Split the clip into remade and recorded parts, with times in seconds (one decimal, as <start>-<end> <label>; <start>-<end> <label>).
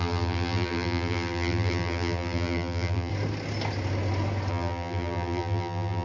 0.0-3.1 remade; 3.1-4.5 recorded; 4.5-6.0 remade